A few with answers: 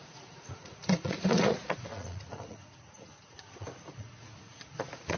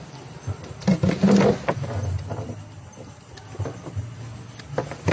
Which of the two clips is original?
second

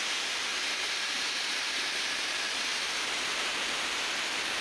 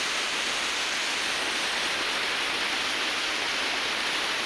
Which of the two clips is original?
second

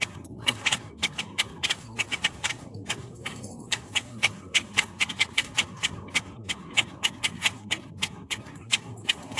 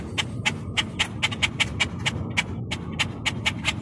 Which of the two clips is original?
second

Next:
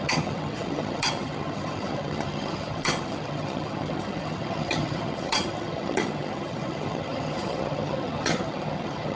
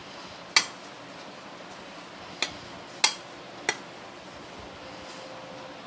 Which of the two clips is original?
second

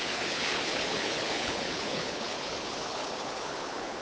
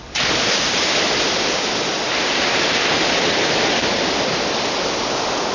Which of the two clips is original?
second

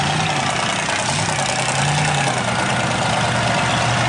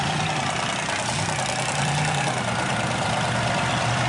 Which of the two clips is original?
first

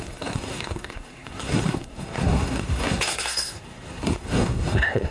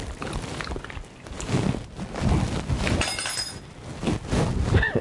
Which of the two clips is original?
second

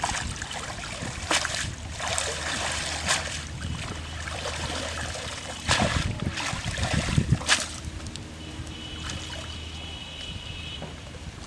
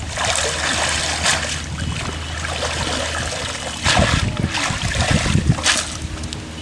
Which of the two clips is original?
second